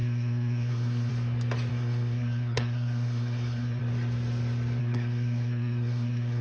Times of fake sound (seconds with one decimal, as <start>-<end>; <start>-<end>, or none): 0.0-1.1; 1.7-3.8; 4.8-6.4